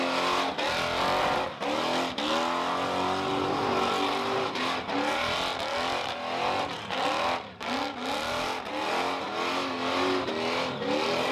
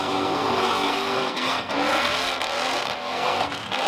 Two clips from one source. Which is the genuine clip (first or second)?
first